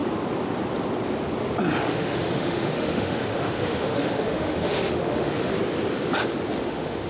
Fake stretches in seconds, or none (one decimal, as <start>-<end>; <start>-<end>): 1.8-5.5; 6.6-7.1

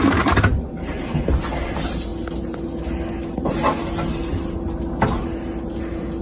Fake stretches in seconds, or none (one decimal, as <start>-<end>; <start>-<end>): none

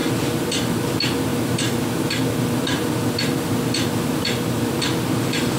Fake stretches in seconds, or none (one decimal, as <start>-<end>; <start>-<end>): none

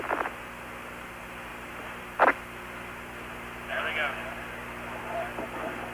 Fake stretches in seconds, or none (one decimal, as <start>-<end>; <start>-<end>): none